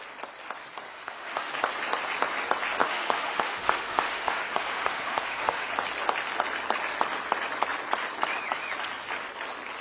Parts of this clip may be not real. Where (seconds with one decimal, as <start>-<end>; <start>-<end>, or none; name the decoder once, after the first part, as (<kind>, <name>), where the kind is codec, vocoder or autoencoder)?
0.9-1.5 (autoencoder, DAC-VAE); 2.8-5.7